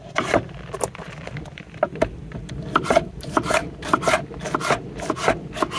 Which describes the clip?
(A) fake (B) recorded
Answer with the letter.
B